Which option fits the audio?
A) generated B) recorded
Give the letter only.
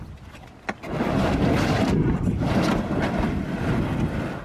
B